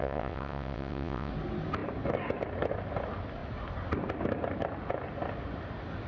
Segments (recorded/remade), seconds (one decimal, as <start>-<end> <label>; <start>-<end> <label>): 0.0-1.3 remade; 1.3-6.1 recorded